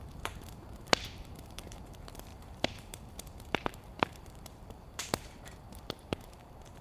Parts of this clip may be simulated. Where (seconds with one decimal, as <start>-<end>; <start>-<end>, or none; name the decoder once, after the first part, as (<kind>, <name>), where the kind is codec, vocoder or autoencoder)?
0.0-6.8 (vocoder, BigVGAN v2)